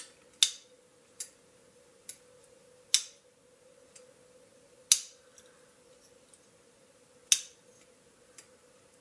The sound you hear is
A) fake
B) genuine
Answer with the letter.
B